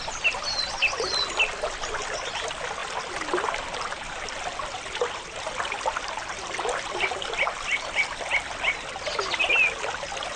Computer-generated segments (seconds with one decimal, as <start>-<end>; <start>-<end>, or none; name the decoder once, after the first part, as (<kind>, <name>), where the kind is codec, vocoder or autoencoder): 2.8-7.9 (vocoder, BigVGAN v2)